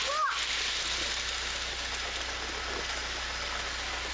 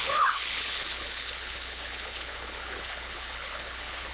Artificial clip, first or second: second